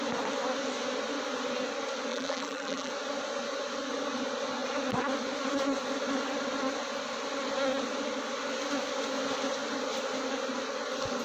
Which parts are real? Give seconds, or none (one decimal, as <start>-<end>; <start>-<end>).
0.0-2.1; 2.9-11.2

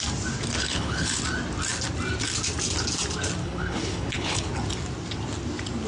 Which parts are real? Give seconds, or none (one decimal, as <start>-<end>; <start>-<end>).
0.0-0.6; 1.2-3.4; 4.5-5.9

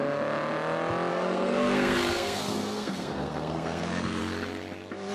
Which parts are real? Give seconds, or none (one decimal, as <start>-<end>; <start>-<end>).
0.0-1.1; 4.2-5.1

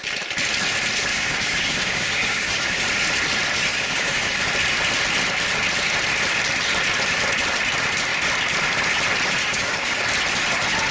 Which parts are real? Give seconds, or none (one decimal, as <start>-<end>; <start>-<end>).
0.0-1.1; 2.8-3.7; 4.4-9.4; 10.0-10.9